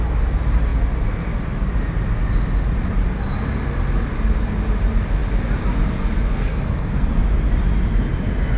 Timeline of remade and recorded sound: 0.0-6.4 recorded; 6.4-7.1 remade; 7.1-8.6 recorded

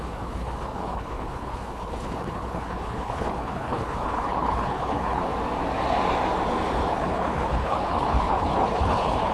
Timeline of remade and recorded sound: 0.0-5.2 remade; 5.2-6.9 recorded; 6.9-9.3 remade

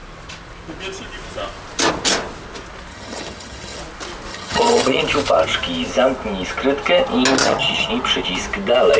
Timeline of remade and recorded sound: 0.0-2.9 recorded; 2.9-3.8 remade; 3.8-4.3 recorded; 4.3-5.0 remade; 5.0-7.4 recorded; 7.4-7.9 remade; 7.9-9.0 recorded

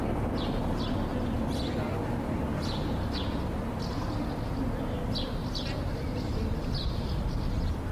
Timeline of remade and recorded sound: 0.0-7.9 recorded

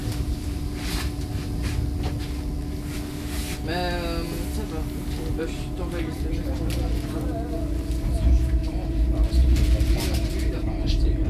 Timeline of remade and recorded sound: 0.0-1.3 remade; 1.3-5.3 recorded; 5.3-6.3 remade; 6.3-8.6 recorded; 8.6-11.3 remade

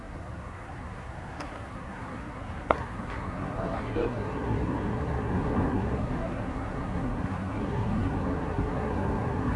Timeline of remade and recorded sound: 0.0-9.6 remade